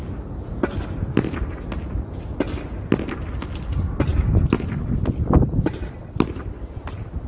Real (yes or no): yes